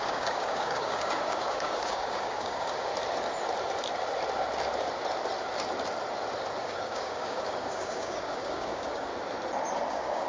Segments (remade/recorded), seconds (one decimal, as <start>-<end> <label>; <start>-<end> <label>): 0.0-2.9 remade; 2.9-6.6 recorded; 6.6-9.1 remade; 9.1-9.9 recorded; 9.9-10.3 remade